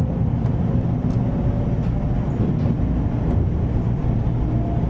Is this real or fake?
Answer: real